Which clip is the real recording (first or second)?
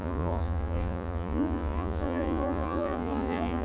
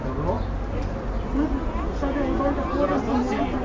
second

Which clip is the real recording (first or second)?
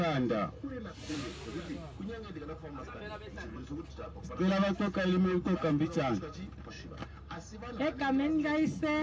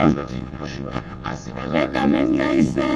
first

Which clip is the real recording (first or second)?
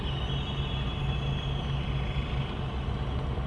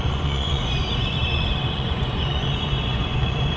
first